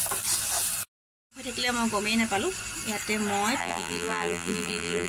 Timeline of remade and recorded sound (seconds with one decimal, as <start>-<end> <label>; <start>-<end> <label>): 0.0-3.6 recorded; 3.6-5.1 remade